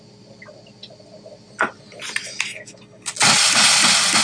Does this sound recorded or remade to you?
recorded